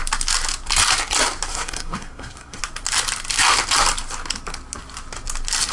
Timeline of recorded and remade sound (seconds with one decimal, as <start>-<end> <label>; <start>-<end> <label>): 0.0-1.5 recorded; 1.5-2.6 remade; 2.6-5.7 recorded